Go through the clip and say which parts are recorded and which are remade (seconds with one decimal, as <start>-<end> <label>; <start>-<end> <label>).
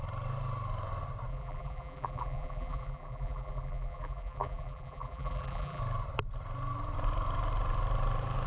0.0-1.3 recorded; 1.3-5.8 remade; 5.8-8.5 recorded